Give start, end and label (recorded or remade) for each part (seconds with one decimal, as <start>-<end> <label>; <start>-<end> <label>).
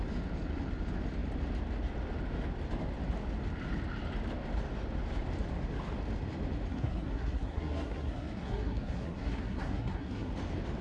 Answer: 0.0-6.7 recorded; 6.7-10.3 remade; 10.3-10.8 recorded